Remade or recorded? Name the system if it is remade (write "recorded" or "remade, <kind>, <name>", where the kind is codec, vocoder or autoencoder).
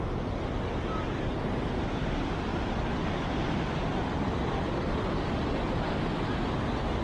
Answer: recorded